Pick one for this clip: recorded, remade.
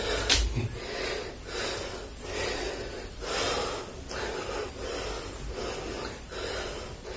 recorded